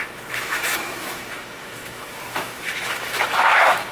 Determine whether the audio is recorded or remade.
remade